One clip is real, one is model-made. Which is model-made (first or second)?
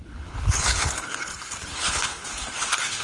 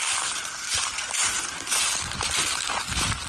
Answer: first